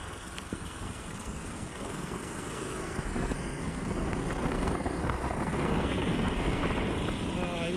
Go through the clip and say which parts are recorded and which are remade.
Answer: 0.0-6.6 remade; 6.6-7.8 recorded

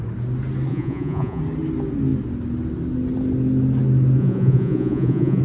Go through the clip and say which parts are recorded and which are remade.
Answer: 0.0-0.7 recorded; 0.7-1.4 remade; 1.4-4.2 recorded; 4.2-5.4 remade

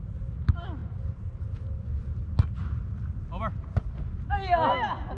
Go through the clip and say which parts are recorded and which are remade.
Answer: 0.0-5.2 recorded

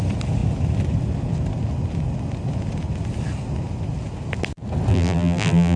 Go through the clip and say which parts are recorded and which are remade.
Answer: 0.0-4.9 recorded; 4.9-5.8 remade

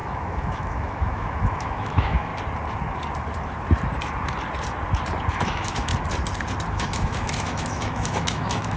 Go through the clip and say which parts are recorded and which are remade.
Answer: 0.0-2.3 remade; 2.3-5.3 recorded; 5.3-5.9 remade; 5.9-6.7 recorded; 6.7-8.8 remade

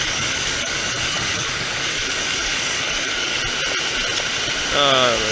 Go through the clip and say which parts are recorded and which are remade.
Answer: 0.0-3.4 remade; 3.4-5.3 recorded

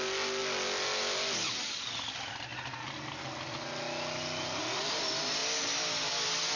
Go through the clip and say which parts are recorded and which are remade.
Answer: 0.0-6.6 recorded

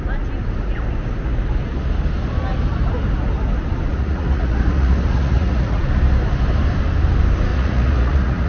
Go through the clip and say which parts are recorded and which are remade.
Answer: 0.0-3.9 recorded; 3.9-5.8 remade; 5.8-7.5 recorded; 7.5-8.5 remade